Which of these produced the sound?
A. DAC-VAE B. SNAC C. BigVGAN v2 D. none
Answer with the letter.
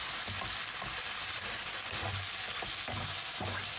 D